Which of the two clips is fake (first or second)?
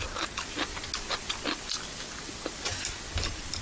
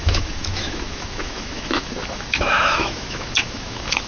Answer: second